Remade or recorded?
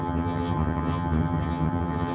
remade